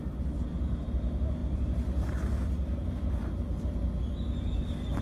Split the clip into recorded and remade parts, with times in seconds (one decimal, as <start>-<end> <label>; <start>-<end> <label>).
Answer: 0.0-5.0 recorded

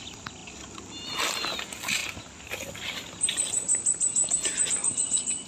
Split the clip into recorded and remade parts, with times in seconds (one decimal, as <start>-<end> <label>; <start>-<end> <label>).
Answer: 0.0-5.5 remade

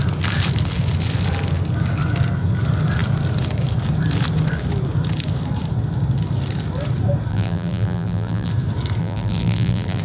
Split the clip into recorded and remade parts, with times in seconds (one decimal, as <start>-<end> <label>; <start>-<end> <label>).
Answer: 0.0-7.3 recorded; 7.3-8.5 remade; 8.5-9.0 recorded; 9.0-10.0 remade

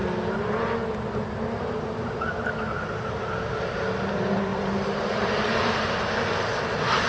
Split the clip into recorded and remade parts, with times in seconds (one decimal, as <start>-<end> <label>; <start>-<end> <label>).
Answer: 0.0-4.5 recorded; 4.5-5.9 remade; 5.9-7.1 recorded

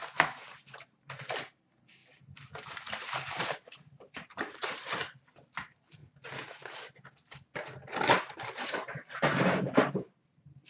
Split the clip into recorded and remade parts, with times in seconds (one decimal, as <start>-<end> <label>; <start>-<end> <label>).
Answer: 0.0-2.0 remade; 2.0-2.8 recorded; 2.8-6.0 remade; 6.0-8.2 recorded; 8.2-10.7 remade

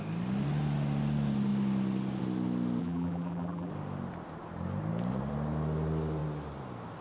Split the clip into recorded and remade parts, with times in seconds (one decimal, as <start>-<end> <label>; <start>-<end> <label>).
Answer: 0.0-2.8 recorded; 2.8-3.7 remade; 3.7-7.0 recorded